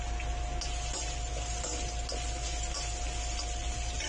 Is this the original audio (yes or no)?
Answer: yes